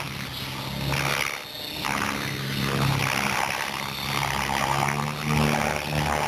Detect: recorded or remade recorded